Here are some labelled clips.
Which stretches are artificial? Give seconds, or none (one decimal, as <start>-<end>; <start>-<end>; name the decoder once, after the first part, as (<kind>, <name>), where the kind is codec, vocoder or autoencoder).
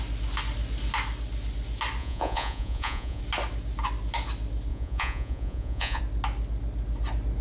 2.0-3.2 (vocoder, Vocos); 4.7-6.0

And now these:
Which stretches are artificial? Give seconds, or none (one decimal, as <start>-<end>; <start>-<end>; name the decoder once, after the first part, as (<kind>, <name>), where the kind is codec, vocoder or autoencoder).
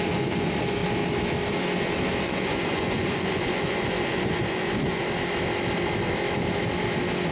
0.0-0.8 (vocoder, Vocos); 2.2-5.0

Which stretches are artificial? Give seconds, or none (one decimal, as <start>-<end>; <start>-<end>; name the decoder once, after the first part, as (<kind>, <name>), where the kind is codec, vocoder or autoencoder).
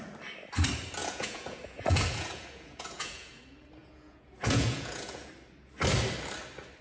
1.0-3.4 (vocoder, Vocos); 3.8-5.3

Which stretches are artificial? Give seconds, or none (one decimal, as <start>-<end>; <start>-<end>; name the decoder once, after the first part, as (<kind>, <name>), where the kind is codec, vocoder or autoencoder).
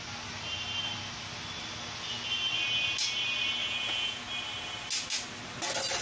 3.6-4.2 (vocoder, Vocos)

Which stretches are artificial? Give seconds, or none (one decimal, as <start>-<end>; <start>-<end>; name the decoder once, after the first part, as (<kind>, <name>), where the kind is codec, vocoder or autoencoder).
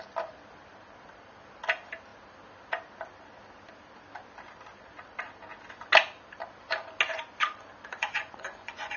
7.9-9.0 (vocoder, Vocos)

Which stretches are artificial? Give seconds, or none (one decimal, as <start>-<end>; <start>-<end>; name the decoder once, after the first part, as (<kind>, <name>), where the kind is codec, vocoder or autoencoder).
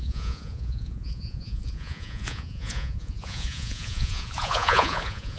0.0-5.4 (vocoder, Vocos)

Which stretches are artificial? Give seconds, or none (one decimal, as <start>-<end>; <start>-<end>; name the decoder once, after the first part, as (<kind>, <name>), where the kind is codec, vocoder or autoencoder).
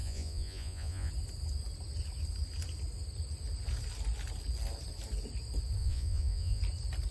0.0-1.1 (vocoder, Vocos); 5.8-6.6